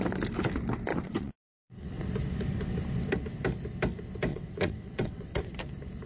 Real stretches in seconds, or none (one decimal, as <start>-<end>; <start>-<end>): 0.0-0.9; 2.0-4.3; 5.4-6.1